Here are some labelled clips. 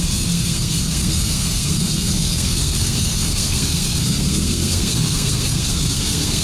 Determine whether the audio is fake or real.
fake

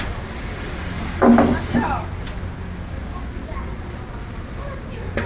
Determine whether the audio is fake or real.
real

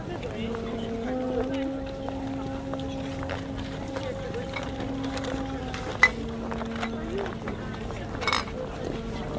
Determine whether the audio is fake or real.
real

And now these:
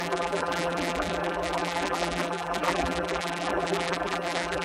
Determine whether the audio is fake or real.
fake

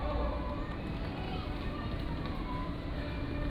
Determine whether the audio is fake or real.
fake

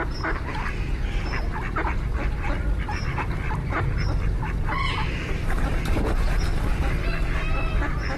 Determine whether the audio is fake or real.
real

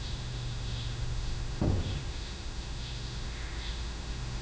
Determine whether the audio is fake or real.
fake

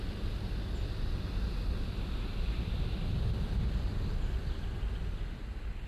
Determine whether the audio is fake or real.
real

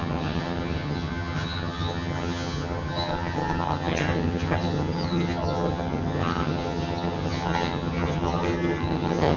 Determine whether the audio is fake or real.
fake